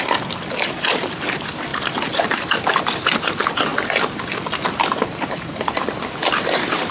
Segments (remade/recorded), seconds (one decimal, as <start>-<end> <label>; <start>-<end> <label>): 0.0-3.7 remade; 3.7-4.7 recorded; 4.7-6.9 remade